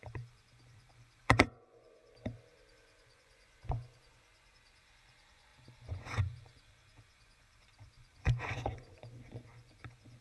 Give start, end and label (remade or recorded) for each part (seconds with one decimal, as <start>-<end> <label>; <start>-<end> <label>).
0.0-2.0 remade; 2.0-2.7 recorded; 2.7-10.2 remade